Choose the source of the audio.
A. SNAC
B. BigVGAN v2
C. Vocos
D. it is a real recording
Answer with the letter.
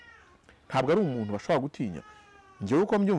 D